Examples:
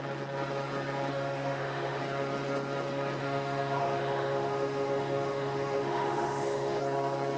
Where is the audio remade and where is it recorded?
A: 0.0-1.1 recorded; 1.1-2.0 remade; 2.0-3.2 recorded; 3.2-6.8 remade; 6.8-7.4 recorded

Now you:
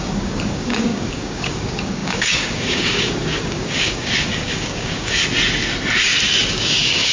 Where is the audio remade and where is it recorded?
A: 0.0-5.2 remade; 5.2-6.5 recorded; 6.5-7.1 remade

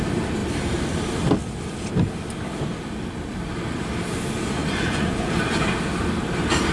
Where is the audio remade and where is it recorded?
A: 0.0-4.6 recorded; 4.6-5.3 remade; 5.3-6.7 recorded

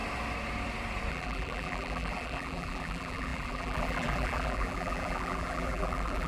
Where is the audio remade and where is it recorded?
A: 0.0-1.1 recorded; 1.1-6.3 remade

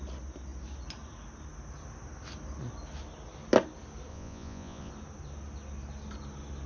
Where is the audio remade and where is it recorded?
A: 0.0-4.1 recorded; 4.1-4.9 remade; 4.9-6.7 recorded

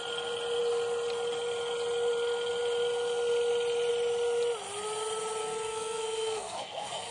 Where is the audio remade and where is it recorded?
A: 0.0-5.4 recorded; 5.4-7.1 remade

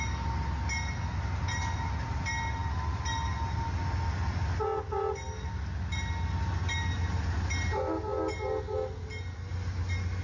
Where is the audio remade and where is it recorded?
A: 0.0-10.2 recorded

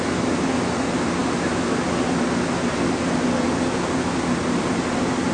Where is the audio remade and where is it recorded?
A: 0.0-5.3 recorded